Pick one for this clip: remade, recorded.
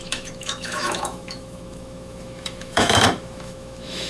remade